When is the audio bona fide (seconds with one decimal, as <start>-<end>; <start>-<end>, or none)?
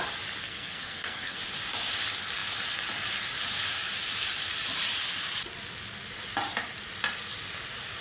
0.0-0.4; 1.4-8.0